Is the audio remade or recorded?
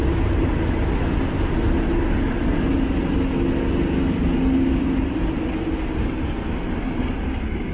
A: recorded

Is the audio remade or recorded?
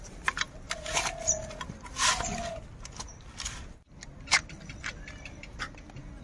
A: recorded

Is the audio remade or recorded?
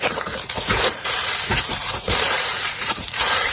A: remade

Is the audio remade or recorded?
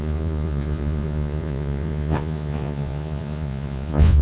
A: remade